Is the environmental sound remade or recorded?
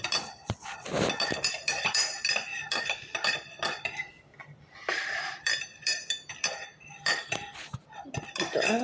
remade